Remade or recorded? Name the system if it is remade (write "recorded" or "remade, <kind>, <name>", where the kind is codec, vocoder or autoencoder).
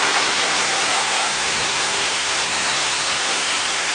remade, codec, SNAC